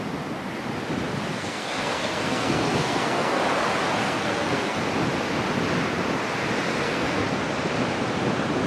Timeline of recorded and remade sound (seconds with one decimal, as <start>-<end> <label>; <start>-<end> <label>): 0.0-1.3 recorded; 1.3-3.4 remade; 3.4-4.0 recorded; 4.0-4.8 remade; 4.8-6.7 recorded; 6.7-7.4 remade; 7.4-8.7 recorded